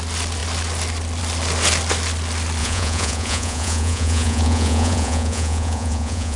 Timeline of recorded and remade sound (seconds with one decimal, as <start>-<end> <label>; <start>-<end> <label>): 0.0-2.6 recorded; 2.6-6.4 remade